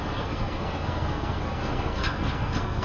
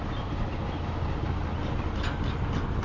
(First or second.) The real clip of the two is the second